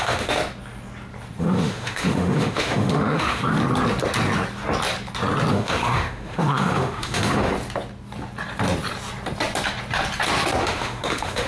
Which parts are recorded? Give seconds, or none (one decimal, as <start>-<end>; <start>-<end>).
0.4-1.4; 3.4-5.5; 7.5-10.6